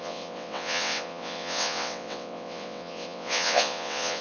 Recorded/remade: remade